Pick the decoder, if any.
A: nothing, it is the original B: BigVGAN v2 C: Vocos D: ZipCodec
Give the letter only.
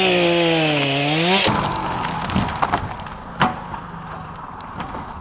A